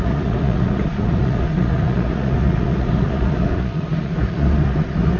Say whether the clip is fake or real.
fake